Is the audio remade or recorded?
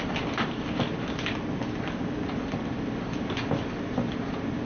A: recorded